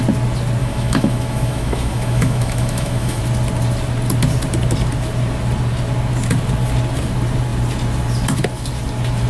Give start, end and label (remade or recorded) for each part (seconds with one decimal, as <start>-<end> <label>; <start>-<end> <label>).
0.0-0.6 recorded; 0.6-3.2 remade; 3.2-9.3 recorded